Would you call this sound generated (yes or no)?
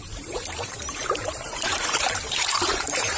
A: yes